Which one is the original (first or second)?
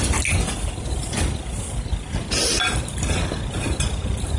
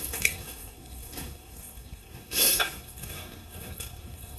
first